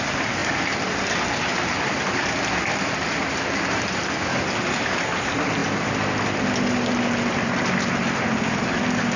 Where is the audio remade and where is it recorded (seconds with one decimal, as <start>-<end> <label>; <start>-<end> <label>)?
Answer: 0.0-9.2 recorded